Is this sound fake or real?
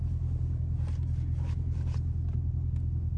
real